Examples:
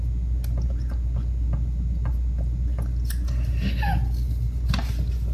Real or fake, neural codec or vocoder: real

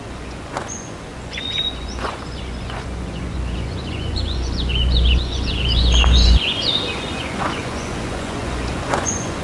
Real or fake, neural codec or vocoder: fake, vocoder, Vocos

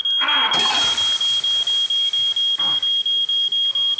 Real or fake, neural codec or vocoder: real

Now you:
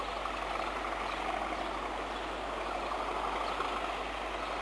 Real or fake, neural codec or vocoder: real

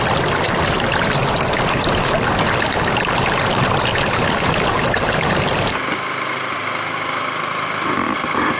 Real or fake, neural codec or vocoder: real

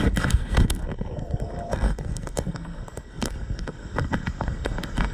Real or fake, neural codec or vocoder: fake, codec, SNAC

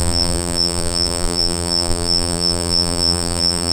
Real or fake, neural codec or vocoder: fake, vocoder, BigVGAN v2